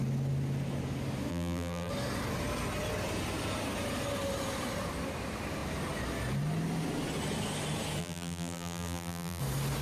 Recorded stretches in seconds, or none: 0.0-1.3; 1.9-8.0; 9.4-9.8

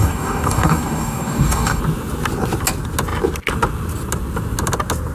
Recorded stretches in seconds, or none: 1.8-5.1

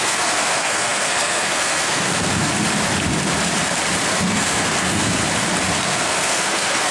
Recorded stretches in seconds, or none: 2.5-4.1; 5.2-5.8